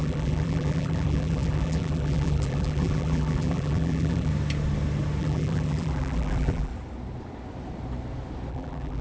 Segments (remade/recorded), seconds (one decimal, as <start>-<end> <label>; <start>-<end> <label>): 0.0-4.3 remade; 4.3-5.2 recorded; 5.2-6.7 remade; 6.7-8.5 recorded; 8.5-9.0 remade